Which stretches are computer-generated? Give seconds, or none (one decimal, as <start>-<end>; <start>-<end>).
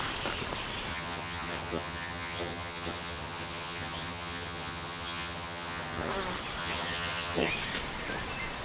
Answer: 0.9-6.1; 6.6-7.5